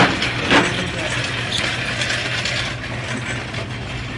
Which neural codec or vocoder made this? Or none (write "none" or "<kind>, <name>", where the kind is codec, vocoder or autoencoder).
none